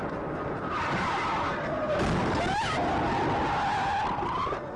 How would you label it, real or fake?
real